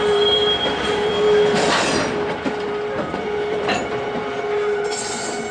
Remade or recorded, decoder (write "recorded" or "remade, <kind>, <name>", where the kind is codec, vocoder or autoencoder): remade, vocoder, BigVGAN v2